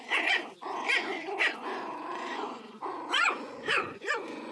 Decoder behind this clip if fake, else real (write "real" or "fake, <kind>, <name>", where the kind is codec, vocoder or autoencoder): fake, vocoder, Vocos